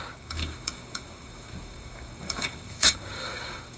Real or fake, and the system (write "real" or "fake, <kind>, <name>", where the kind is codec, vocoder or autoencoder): fake, codec, DAC